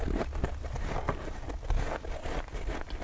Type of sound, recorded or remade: recorded